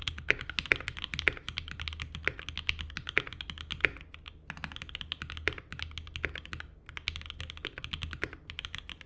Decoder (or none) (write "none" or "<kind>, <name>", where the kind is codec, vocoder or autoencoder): none